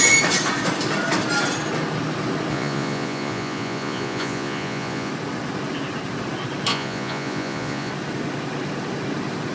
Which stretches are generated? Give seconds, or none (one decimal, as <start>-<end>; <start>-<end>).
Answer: 2.5-5.1; 6.7-7.9